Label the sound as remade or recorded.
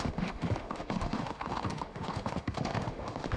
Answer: remade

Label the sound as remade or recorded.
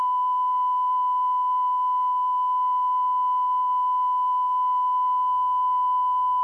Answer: remade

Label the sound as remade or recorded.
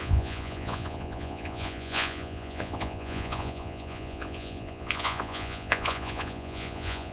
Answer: remade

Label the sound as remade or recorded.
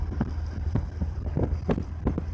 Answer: remade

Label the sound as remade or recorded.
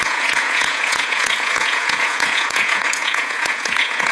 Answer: remade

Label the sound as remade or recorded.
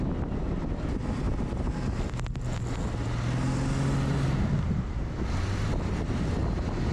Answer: recorded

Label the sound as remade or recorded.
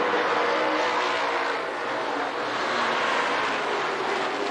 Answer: recorded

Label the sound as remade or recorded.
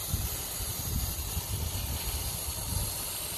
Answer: recorded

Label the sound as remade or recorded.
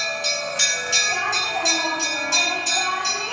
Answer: recorded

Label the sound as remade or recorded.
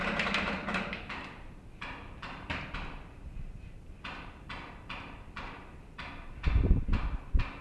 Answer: remade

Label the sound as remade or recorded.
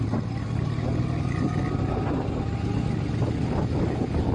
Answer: recorded